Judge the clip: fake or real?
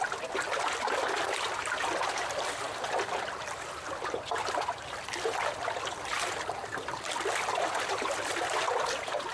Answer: real